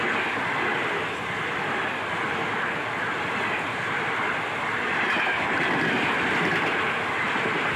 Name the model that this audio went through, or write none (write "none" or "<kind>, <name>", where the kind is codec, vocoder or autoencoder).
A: none